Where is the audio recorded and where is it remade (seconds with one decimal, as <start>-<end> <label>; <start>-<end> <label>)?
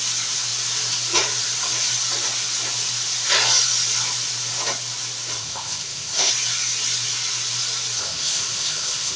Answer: 0.0-5.4 recorded; 5.4-6.3 remade; 6.3-8.0 recorded; 8.0-9.2 remade